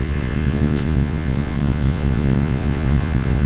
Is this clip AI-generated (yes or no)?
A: yes